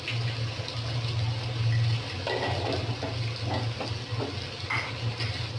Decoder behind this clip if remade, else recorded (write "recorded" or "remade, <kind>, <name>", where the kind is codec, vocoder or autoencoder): recorded